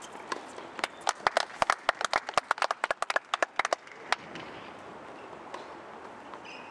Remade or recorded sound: recorded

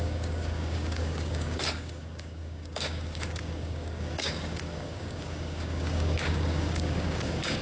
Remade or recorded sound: remade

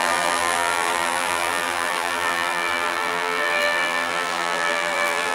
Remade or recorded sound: remade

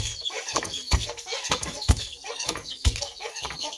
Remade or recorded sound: remade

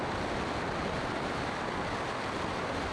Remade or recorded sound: recorded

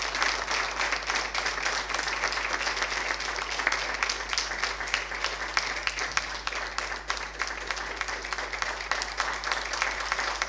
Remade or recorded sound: recorded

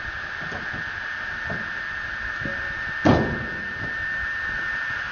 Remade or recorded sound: recorded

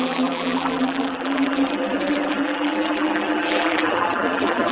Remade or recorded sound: remade